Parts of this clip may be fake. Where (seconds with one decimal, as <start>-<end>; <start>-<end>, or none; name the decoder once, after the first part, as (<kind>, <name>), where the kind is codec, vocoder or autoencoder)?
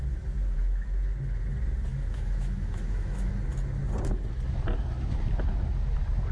1.9-3.3 (autoencoder, DAC-VAE)